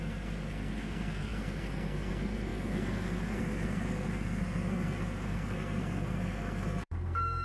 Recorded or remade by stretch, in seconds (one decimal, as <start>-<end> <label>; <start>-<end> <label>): 0.0-7.4 remade